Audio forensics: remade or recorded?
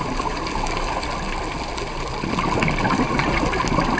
recorded